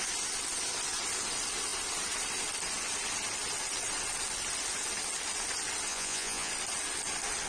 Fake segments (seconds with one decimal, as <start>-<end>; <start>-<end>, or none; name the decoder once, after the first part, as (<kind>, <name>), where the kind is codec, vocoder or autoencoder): 5.9-6.5 (vocoder, Vocos)